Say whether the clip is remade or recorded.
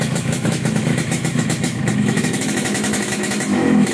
remade